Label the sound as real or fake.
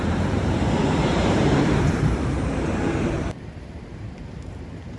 fake